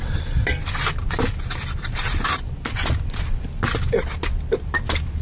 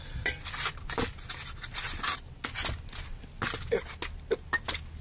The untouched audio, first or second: second